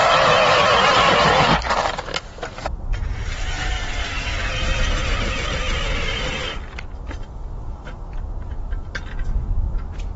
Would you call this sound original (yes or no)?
yes